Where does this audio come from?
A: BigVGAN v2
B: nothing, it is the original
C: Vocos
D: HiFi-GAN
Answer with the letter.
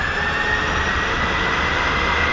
B